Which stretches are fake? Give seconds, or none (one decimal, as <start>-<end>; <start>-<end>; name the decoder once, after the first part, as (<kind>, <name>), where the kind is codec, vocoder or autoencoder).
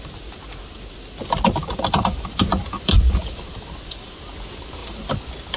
none